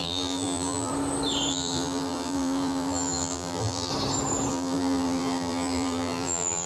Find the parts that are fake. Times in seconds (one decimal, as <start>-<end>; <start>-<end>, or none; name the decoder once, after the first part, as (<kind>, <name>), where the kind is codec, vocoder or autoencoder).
0.0-0.9 (vocoder, BigVGAN v2); 1.5-3.9; 4.5-6.7